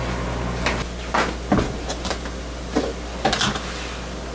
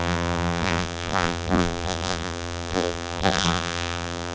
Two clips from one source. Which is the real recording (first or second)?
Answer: first